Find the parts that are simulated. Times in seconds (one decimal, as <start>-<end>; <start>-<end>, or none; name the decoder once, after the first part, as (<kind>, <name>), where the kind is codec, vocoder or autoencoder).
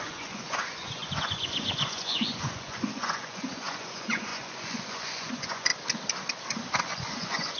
0.0-5.7 (vocoder, Vocos); 6.8-7.6